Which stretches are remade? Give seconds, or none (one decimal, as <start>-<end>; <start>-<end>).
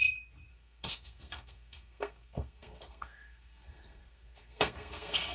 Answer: 0.5-5.3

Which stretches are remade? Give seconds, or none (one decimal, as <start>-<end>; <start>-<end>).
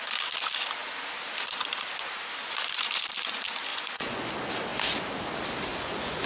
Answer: 3.7-4.3; 5.7-6.3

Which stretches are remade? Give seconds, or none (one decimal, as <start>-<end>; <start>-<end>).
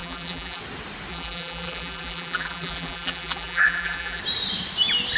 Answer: 0.0-0.6; 1.1-4.2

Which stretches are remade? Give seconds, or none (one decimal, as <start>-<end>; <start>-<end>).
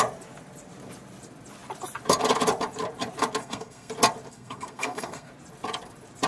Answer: 3.4-3.9; 4.3-5.3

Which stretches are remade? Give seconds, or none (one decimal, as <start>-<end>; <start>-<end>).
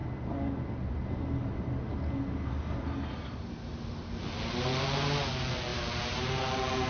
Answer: 5.7-6.4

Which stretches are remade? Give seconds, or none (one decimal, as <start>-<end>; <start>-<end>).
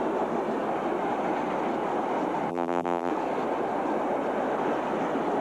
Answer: 2.5-3.1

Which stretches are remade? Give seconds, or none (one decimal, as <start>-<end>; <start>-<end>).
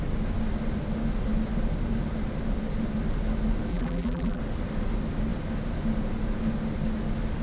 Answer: 3.7-4.4